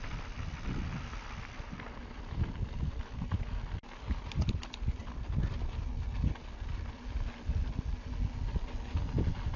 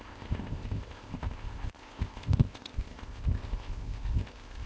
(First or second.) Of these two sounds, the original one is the first